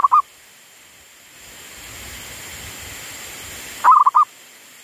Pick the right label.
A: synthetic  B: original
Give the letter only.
B